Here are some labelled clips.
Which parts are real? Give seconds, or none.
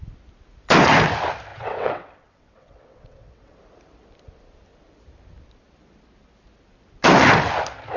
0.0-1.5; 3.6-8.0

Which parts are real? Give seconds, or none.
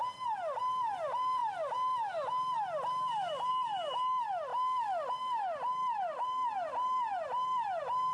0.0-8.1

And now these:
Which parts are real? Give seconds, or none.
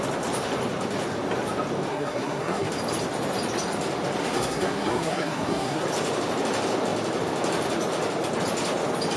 0.0-1.9; 2.7-4.2; 5.8-9.2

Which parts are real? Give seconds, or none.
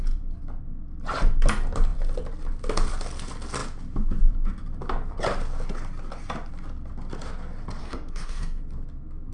0.0-7.8; 8.6-9.3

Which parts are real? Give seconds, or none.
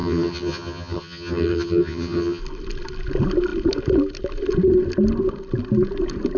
2.4-6.4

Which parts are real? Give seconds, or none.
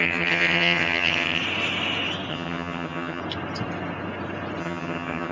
1.4-2.3; 3.2-4.6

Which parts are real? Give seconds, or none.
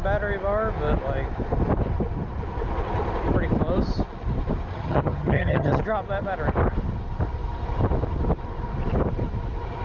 0.0-4.7; 5.8-9.8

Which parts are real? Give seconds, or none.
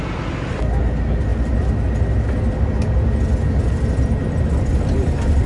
0.0-5.5